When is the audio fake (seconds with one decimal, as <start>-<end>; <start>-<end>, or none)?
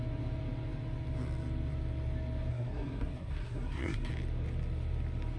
2.5-4.1